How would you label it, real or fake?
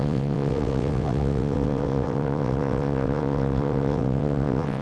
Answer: fake